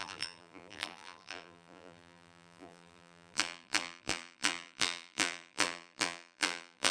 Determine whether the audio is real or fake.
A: fake